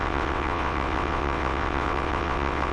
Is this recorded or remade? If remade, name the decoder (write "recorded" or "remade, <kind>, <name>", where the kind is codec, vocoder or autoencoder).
remade, vocoder, WaveNeXt